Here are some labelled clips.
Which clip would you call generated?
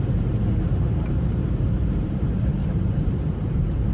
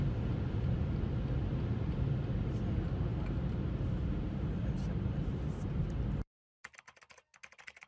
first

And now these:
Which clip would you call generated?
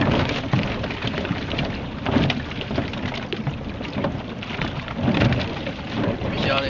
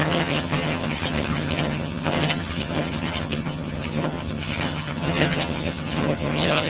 second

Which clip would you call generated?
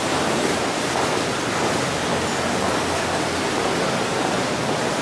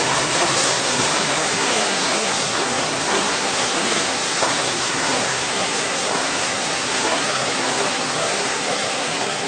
second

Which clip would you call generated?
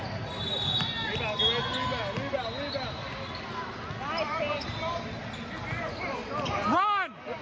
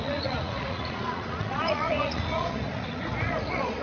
second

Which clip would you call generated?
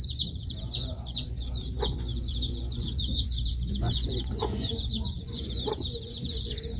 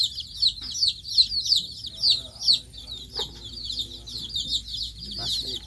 first